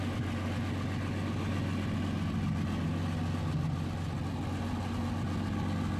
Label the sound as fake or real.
real